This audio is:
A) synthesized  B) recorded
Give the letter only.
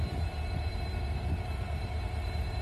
A